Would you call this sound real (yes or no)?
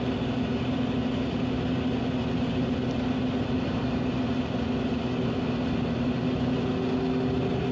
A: yes